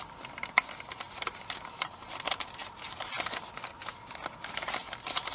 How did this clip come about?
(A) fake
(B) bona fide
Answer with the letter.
B